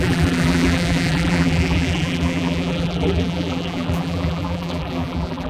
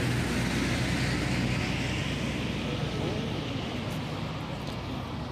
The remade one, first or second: first